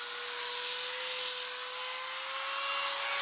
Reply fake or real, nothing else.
real